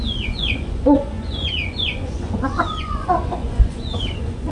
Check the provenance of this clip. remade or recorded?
remade